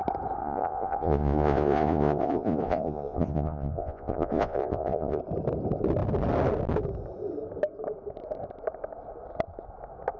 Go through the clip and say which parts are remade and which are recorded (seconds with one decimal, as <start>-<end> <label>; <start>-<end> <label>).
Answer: 0.0-0.4 recorded; 0.4-5.2 remade; 5.2-10.2 recorded